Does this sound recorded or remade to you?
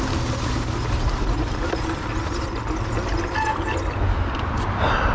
recorded